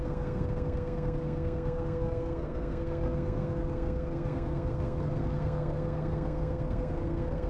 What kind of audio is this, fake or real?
fake